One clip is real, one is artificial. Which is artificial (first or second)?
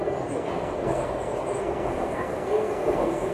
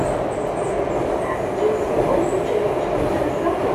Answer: first